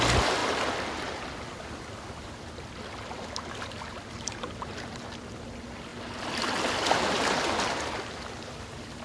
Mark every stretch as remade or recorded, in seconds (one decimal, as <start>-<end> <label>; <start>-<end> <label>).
0.0-9.0 recorded